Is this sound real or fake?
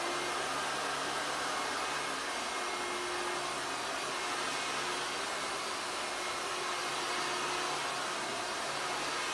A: real